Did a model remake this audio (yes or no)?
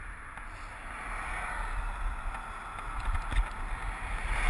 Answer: no